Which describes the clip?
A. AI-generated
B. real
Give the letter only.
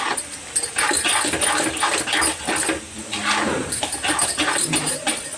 B